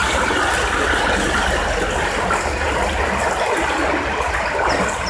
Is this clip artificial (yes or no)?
no